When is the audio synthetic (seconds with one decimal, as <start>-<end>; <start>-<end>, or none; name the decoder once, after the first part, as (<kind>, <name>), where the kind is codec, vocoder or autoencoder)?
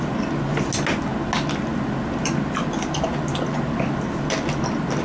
none